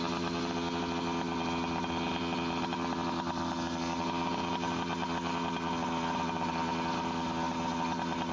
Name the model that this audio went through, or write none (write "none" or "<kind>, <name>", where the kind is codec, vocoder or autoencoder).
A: none